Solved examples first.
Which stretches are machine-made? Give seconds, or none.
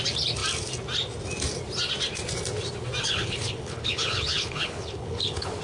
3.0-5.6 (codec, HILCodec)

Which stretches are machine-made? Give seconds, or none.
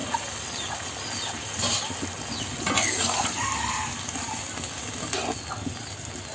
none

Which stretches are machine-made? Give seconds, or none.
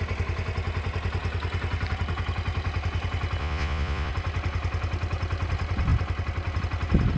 3.4-4.1 (vocoder, Vocos)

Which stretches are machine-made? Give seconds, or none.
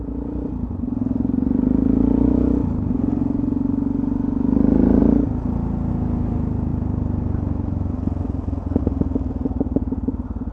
none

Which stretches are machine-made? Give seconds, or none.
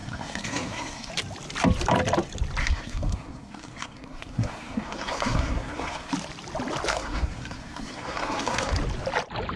0.0-1.1 (codec, SNAC); 2.6-6.1; 6.9-8.7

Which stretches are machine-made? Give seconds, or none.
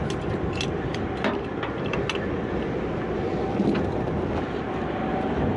none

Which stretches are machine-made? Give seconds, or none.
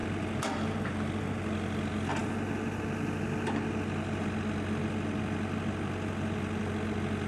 none